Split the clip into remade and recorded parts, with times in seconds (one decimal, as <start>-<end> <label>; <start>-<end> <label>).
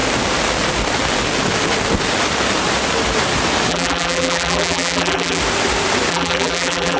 0.0-3.7 recorded; 3.7-5.4 remade; 5.4-6.1 recorded; 6.1-7.0 remade